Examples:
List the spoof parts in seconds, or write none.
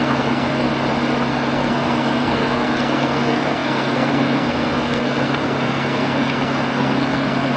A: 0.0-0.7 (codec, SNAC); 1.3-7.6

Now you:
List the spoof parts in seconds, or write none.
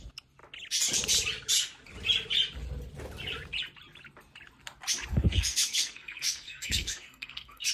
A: 5.1-7.7 (codec, SNAC)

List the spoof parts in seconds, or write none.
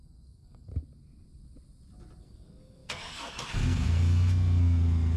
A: 0.0-0.7 (codec, SNAC); 2.2-5.2